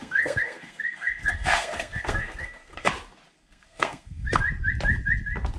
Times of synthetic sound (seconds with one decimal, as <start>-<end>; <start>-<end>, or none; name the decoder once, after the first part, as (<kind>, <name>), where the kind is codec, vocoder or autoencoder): 0.0-2.9 (codec, SNAC); 3.4-4.4